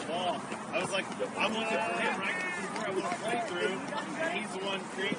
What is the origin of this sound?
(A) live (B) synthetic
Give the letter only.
A